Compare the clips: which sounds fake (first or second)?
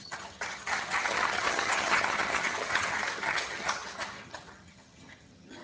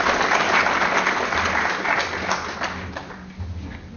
first